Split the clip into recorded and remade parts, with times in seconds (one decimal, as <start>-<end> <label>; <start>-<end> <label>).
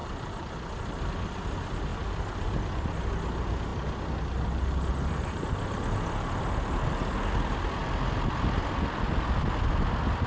0.0-10.3 recorded